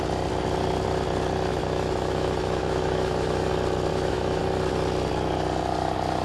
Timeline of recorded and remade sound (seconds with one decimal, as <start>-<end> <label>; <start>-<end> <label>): 0.0-1.5 recorded; 1.5-3.5 remade; 3.5-3.9 recorded; 3.9-4.4 remade; 4.4-6.2 recorded